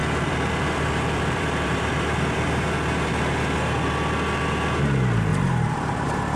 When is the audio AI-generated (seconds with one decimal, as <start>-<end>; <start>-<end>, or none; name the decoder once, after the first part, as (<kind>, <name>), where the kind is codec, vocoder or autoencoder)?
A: 0.0-3.1 (vocoder, BigVGAN v2); 5.3-6.4